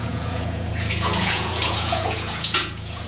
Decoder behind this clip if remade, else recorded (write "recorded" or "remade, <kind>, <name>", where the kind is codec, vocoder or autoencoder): remade, vocoder, Vocos